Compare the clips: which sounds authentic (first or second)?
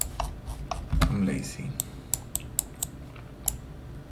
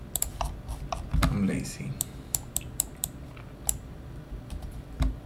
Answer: first